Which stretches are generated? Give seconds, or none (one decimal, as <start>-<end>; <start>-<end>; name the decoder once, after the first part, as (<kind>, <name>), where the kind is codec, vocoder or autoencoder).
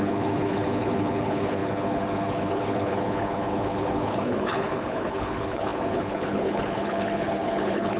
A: 0.0-8.0 (codec, HILCodec)